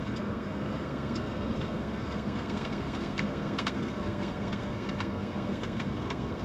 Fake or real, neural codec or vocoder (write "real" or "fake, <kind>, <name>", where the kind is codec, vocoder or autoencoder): fake, codec, SNAC